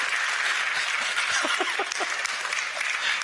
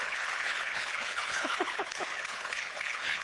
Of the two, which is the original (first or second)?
first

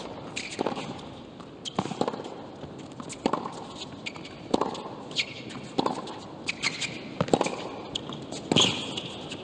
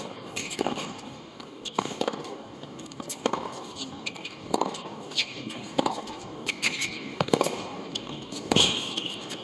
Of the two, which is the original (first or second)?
first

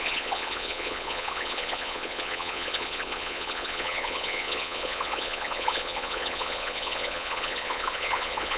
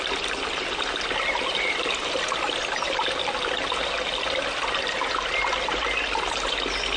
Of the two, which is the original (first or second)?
second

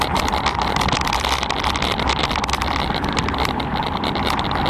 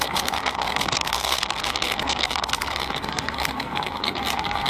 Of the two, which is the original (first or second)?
first